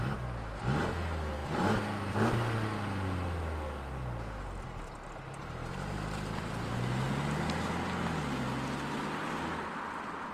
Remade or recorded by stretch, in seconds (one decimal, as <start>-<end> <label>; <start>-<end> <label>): 0.0-5.6 recorded; 5.6-7.1 remade; 7.1-10.3 recorded